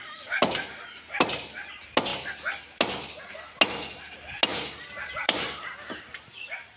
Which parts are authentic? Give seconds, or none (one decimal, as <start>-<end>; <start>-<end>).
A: 0.0-4.5; 6.2-6.8